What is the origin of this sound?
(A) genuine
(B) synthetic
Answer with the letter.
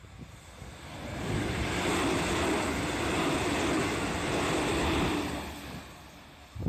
A